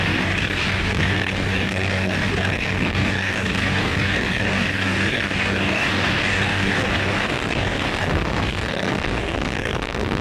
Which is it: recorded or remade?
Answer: remade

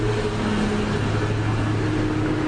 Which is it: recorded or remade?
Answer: recorded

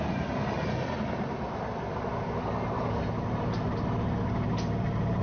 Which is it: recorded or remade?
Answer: recorded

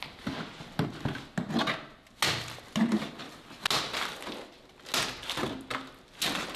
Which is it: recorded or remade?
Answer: recorded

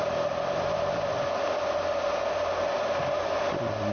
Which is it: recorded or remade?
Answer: recorded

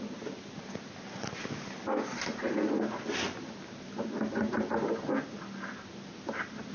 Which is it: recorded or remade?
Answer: recorded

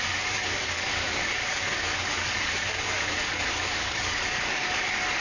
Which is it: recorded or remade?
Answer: remade